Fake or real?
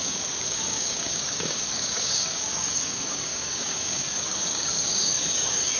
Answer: fake